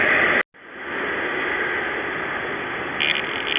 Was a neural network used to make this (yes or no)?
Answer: no